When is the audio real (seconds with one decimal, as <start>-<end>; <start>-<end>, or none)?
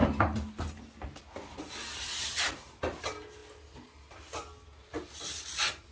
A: 0.0-5.9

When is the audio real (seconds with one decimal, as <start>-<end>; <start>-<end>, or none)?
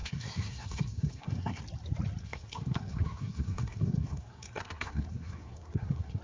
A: 1.6-2.2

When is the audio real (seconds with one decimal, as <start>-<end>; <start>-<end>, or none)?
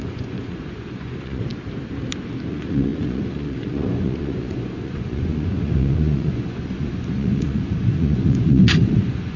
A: 1.5-2.5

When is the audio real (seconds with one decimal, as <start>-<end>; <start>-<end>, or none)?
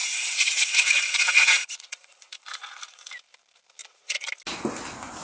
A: 3.1-3.8; 4.3-5.2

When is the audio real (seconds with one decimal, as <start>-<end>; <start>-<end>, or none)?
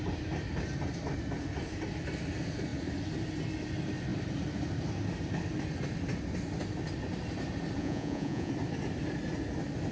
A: 0.0-7.8; 8.5-9.9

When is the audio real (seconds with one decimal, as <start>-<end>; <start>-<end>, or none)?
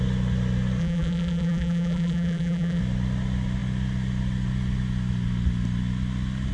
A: 0.0-0.8; 2.8-6.5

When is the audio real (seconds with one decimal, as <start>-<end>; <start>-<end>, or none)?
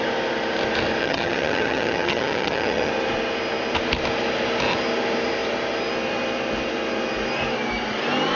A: 0.0-1.0; 2.9-8.4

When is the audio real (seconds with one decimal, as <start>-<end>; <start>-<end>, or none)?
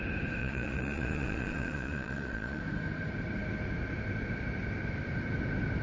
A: 0.0-0.4; 2.6-5.8